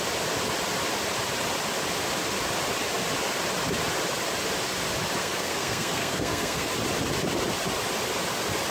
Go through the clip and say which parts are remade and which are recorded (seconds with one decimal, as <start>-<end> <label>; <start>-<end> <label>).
0.0-5.2 recorded; 5.2-6.7 remade; 6.7-8.7 recorded